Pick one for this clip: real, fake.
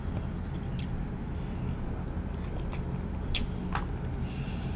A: real